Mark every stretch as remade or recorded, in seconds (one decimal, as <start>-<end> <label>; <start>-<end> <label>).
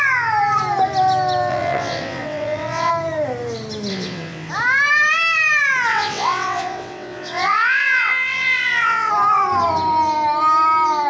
0.0-1.5 recorded; 1.5-2.9 remade; 2.9-3.9 recorded; 3.9-4.5 remade; 4.5-5.9 recorded; 5.9-9.1 remade; 9.1-11.1 recorded